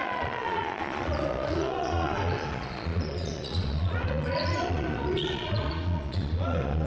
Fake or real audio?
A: fake